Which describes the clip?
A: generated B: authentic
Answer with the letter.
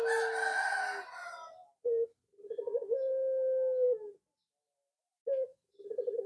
B